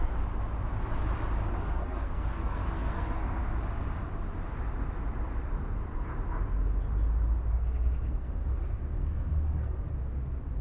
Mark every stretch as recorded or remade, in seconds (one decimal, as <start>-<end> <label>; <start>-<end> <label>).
0.0-1.6 recorded; 1.6-3.4 remade; 3.4-7.5 recorded; 7.5-9.9 remade; 9.9-10.6 recorded